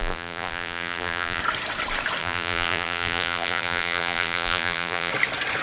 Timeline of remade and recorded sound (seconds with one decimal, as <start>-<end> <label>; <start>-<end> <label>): 0.0-1.4 remade; 1.4-2.2 recorded; 2.2-5.1 remade; 5.1-5.6 recorded